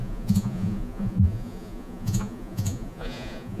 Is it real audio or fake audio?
fake